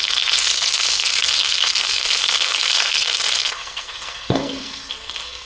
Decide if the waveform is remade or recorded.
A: remade